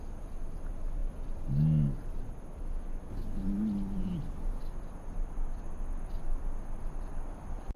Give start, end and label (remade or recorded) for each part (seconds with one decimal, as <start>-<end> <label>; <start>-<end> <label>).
0.0-7.8 recorded